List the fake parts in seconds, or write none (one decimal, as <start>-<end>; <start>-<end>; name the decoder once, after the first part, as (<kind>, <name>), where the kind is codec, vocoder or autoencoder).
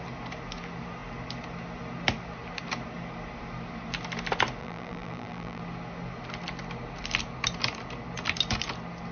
4.6-5.6 (vocoder, BigVGAN v2)